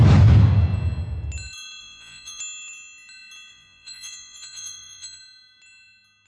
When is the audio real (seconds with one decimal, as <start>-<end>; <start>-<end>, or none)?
0.0-1.8; 2.4-3.5; 5.2-6.3

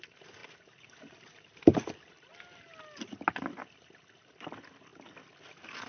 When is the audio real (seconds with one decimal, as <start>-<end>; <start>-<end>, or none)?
2.7-3.6; 4.9-5.9

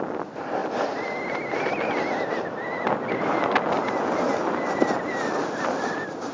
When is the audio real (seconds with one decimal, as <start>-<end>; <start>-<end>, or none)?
0.0-6.3

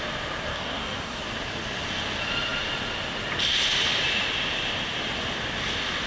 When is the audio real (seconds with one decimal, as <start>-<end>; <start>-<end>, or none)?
0.0-0.5; 1.2-6.1

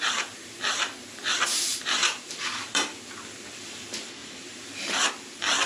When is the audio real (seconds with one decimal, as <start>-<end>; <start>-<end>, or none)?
0.0-2.0; 3.0-4.2; 5.1-5.7

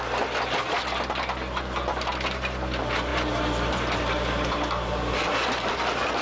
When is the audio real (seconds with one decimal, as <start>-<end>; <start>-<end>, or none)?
0.0-6.2

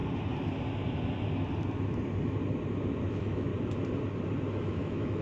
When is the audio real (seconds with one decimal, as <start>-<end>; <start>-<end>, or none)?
0.0-3.1; 3.5-4.6